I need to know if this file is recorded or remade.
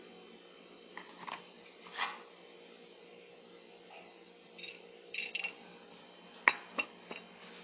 recorded